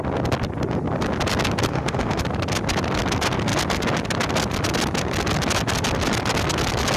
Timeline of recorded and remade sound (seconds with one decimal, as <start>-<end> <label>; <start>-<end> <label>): 0.0-1.7 recorded; 1.7-2.2 remade; 2.2-7.0 recorded